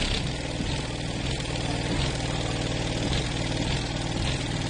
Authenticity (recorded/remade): recorded